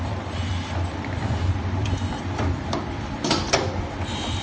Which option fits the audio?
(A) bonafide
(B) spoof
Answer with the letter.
B